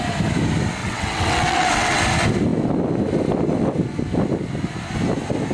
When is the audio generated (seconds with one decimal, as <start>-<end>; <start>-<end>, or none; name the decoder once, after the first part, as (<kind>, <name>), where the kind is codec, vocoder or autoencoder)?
0.8-2.0 (vocoder, WaveNeXt)